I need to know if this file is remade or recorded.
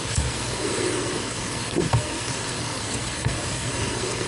remade